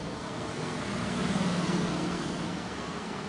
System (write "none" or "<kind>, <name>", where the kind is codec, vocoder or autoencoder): codec, SNAC